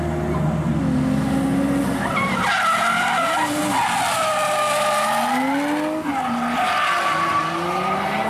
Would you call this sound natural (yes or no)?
yes